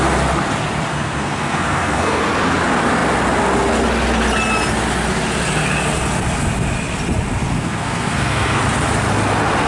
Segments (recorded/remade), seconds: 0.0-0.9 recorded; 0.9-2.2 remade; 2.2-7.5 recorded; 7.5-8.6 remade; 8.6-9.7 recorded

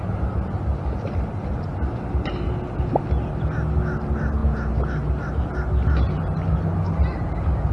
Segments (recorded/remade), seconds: 0.0-7.7 recorded

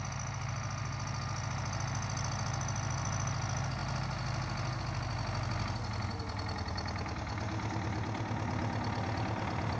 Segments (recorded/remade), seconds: 0.0-9.8 recorded

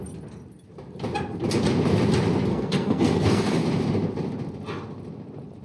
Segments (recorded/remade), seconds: 0.0-2.5 recorded; 2.5-3.6 remade; 3.6-5.6 recorded

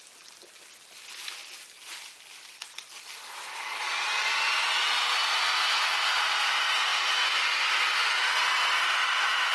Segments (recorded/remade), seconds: 0.0-9.5 recorded

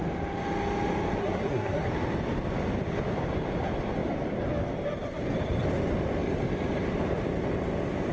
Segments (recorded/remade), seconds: 0.0-1.2 recorded; 1.2-1.9 remade; 1.9-8.1 recorded

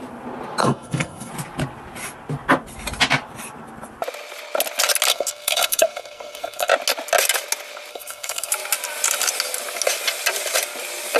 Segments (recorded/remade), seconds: 0.0-0.6 recorded; 0.6-1.3 remade; 1.3-5.1 recorded; 5.1-6.7 remade; 6.7-7.9 recorded; 7.9-8.5 remade; 8.5-11.2 recorded